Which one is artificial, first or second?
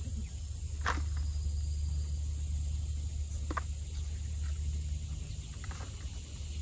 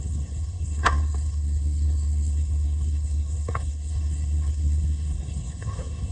second